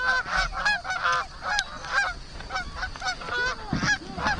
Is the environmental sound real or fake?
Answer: real